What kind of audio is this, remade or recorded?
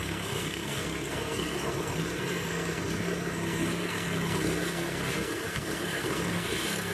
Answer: remade